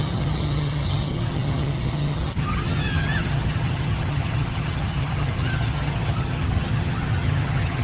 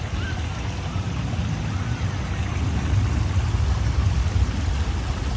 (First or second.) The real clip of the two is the second